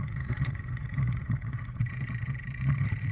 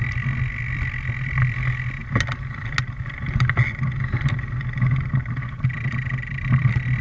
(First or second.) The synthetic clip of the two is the first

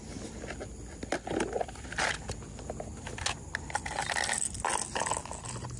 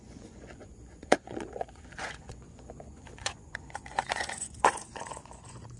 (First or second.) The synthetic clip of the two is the second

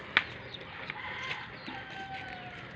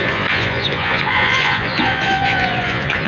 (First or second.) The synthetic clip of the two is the second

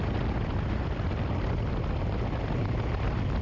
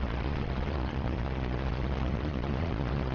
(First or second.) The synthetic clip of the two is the second